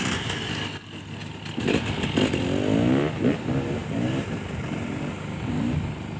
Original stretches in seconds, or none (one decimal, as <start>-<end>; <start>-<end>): 0.0-6.2